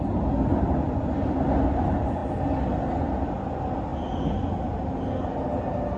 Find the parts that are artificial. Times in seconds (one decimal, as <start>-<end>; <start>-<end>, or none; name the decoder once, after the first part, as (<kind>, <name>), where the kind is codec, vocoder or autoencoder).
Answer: none